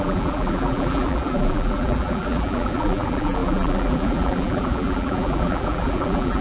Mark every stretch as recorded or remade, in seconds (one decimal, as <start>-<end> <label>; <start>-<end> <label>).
0.0-6.4 remade